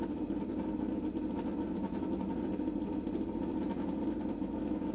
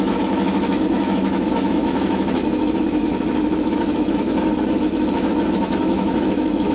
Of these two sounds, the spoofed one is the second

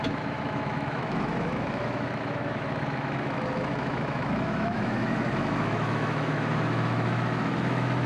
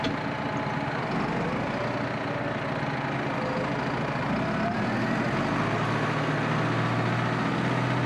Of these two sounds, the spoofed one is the first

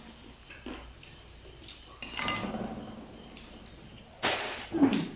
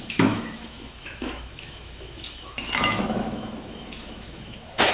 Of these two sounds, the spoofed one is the second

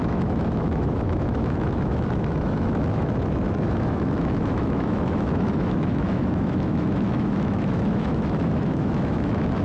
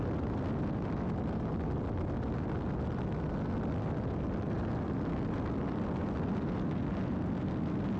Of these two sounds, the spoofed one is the first